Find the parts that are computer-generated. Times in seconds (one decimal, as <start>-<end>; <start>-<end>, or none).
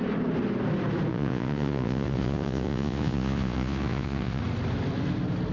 1.1-4.4